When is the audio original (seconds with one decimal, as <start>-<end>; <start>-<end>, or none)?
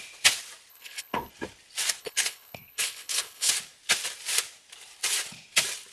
0.0-0.7; 1.3-2.0; 3.5-5.9